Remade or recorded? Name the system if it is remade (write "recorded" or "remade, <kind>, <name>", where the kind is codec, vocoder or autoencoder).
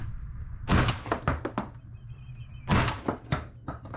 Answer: recorded